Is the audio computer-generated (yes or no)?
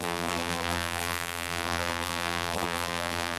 yes